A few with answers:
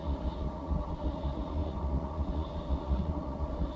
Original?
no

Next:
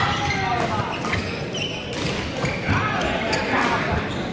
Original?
yes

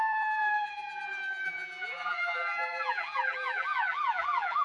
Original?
no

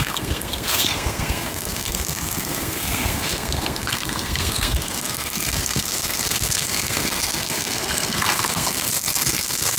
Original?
no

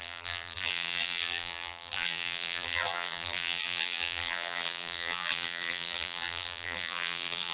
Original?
no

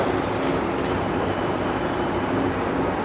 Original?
yes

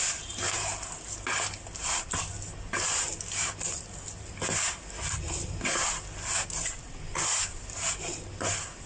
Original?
yes